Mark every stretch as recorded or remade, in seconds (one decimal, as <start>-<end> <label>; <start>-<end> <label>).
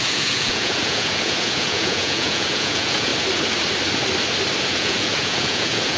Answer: 0.0-3.1 remade; 3.1-4.6 recorded; 4.6-6.0 remade